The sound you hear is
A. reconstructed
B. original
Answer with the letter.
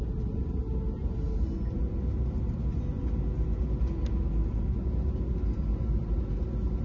B